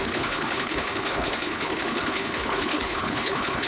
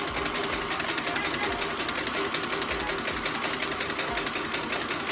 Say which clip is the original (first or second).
second